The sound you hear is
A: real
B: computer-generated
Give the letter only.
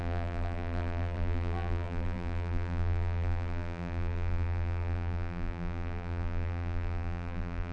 B